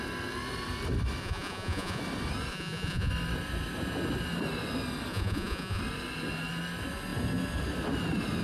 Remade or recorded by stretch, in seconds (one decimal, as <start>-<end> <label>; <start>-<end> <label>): 0.0-1.2 recorded; 1.2-2.0 remade; 2.0-2.5 recorded; 2.5-3.1 remade; 3.1-5.1 recorded; 5.1-5.8 remade; 5.8-8.4 recorded